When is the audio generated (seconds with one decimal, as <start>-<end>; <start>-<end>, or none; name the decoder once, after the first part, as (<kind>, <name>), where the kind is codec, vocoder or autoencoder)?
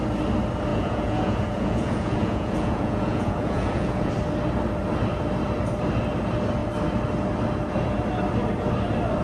0.7-4.1 (vocoder, Vocos)